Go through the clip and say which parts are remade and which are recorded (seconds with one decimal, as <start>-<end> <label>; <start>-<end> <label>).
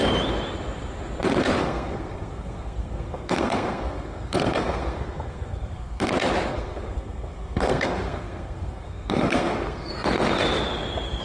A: 0.0-1.6 recorded; 1.6-6.1 remade; 6.1-6.5 recorded; 6.5-9.9 remade; 9.9-11.2 recorded